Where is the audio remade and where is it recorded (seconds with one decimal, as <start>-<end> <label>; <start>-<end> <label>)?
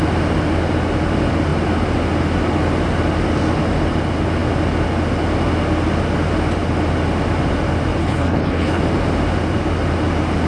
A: 0.0-8.0 recorded; 8.0-8.8 remade; 8.8-10.5 recorded